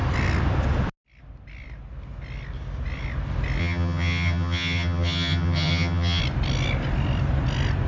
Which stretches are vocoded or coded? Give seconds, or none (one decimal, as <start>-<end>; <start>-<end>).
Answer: 3.6-6.2